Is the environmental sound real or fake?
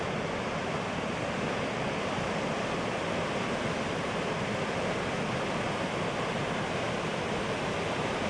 fake